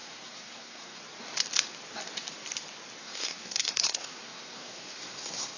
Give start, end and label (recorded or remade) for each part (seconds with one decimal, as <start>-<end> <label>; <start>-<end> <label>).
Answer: 0.0-1.0 remade; 1.0-3.0 recorded; 3.0-5.6 remade